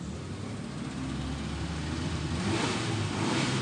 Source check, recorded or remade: recorded